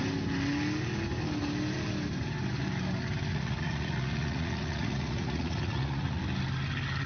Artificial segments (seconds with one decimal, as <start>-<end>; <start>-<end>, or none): 3.3-6.2